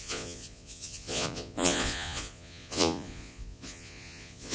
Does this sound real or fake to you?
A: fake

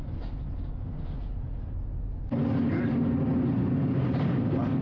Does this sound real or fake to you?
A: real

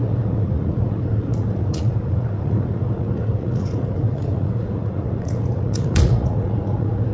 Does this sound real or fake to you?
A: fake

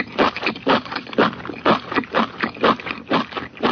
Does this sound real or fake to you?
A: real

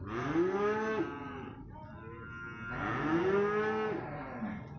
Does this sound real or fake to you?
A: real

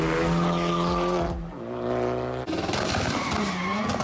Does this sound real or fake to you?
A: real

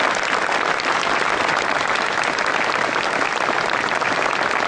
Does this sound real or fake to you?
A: real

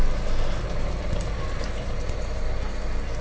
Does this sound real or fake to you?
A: real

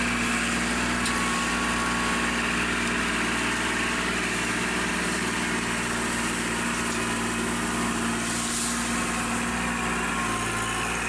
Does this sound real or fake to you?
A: real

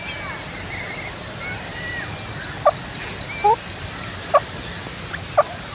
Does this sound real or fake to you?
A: real